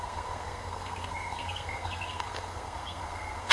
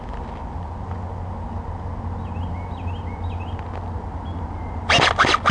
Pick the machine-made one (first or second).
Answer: first